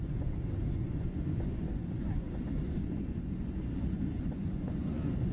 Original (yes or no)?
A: no